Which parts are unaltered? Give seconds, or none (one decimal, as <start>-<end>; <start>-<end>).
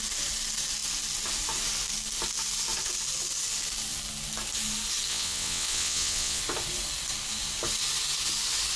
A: 0.0-5.1; 6.4-8.8